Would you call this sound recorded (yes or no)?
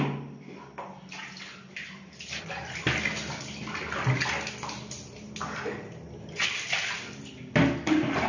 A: yes